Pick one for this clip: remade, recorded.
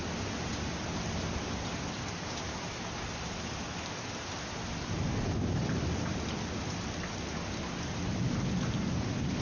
recorded